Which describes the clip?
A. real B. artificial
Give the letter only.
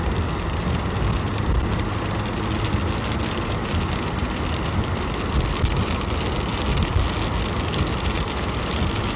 A